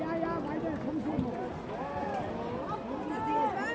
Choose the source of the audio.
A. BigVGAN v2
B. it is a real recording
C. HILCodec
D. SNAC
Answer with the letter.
B